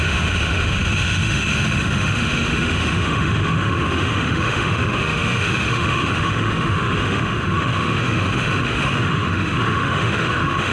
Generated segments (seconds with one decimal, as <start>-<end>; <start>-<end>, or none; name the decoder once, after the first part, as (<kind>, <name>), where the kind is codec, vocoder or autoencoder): 0.0-10.7 (autoencoder, DAC-VAE)